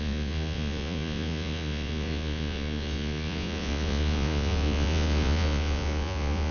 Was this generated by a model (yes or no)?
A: yes